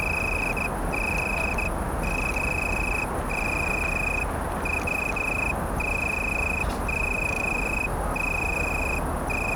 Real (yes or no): yes